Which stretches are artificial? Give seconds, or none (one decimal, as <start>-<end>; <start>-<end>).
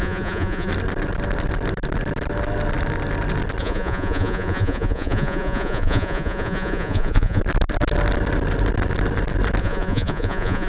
0.0-0.7; 3.6-7.4; 9.6-10.7